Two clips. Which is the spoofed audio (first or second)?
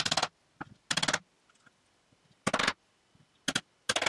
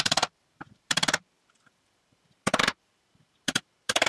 second